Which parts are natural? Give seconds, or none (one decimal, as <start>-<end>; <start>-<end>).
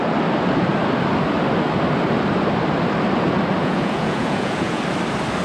0.0-3.6; 4.8-5.4